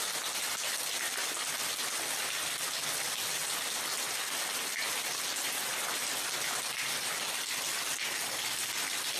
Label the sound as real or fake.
real